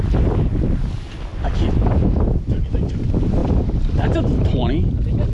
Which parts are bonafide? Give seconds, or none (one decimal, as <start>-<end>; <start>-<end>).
0.0-3.4; 4.7-5.3